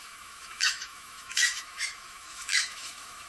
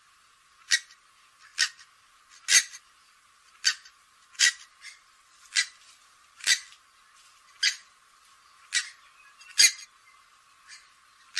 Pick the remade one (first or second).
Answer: first